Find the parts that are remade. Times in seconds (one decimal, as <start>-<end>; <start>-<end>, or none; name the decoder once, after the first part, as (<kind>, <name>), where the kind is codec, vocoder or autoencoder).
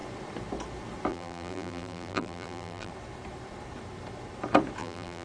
1.1-2.9 (vocoder, BigVGAN v2); 4.8-5.2